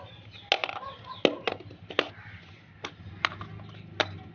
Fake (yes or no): no